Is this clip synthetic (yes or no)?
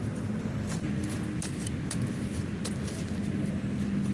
no